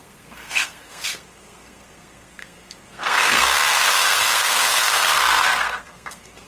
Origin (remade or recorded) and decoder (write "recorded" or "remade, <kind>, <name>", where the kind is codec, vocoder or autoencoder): remade, codec, SNAC